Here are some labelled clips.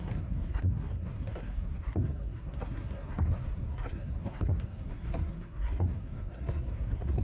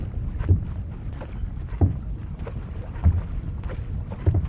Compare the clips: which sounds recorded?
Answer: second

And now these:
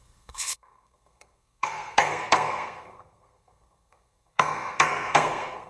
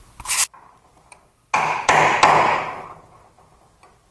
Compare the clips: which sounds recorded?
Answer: second